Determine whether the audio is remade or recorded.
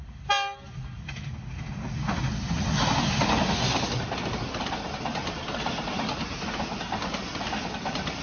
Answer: recorded